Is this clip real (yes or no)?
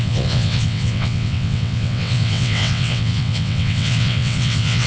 no